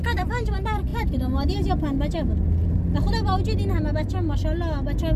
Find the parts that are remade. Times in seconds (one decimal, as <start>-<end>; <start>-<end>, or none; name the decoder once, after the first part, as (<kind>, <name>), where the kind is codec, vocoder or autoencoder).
none